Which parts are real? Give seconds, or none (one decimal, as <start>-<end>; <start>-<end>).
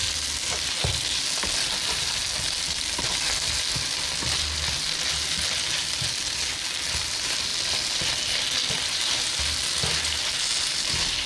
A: 0.0-11.3